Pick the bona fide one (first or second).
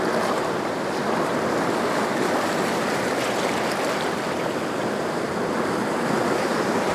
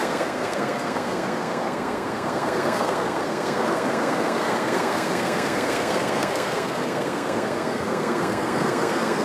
first